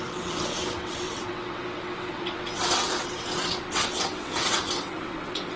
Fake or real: fake